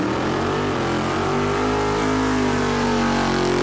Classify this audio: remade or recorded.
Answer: recorded